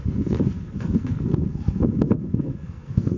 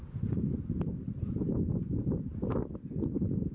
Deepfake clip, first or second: first